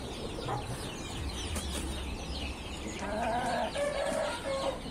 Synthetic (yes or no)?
no